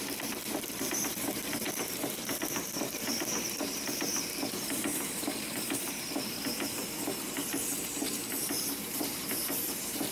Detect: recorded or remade remade